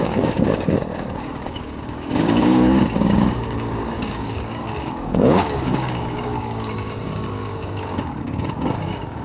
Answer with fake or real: fake